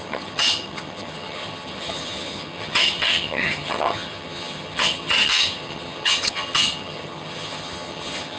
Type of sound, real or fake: fake